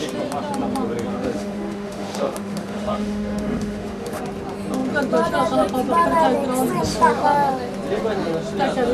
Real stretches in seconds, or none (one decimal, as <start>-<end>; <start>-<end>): 0.0-1.1; 4.2-8.9